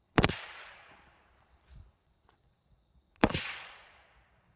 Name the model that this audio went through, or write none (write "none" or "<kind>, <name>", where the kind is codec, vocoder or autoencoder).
vocoder, Vocos